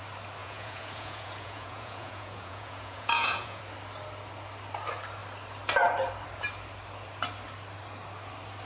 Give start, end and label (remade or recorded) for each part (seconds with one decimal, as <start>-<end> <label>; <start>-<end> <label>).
0.0-0.4 recorded; 0.4-3.6 remade; 3.6-8.7 recorded